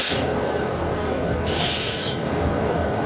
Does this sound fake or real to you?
fake